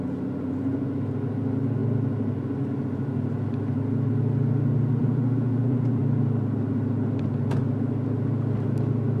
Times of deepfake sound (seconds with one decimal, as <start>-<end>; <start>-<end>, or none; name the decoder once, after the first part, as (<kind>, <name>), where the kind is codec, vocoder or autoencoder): 5.0-6.0 (vocoder, BigVGAN v2)